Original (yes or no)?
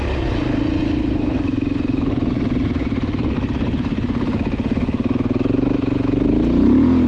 yes